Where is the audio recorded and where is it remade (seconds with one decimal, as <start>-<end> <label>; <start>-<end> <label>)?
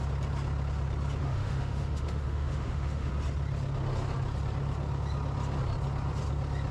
0.0-1.2 recorded; 1.2-3.1 remade; 3.1-6.7 recorded